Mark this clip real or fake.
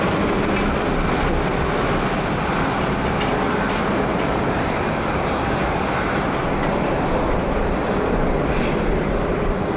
real